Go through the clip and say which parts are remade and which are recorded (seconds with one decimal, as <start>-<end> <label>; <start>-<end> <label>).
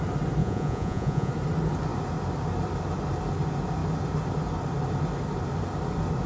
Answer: 0.0-0.4 recorded; 0.4-1.3 remade; 1.3-6.3 recorded